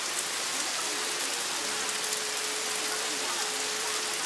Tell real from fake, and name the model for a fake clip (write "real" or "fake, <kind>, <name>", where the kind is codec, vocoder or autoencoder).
real